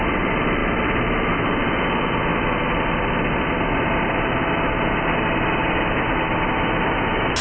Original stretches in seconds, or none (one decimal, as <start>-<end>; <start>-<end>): 0.0-7.4